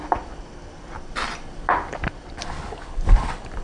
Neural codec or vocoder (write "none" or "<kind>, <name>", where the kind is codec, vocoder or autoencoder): vocoder, BigVGAN v2